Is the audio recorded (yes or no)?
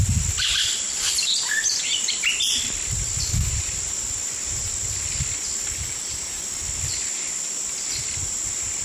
yes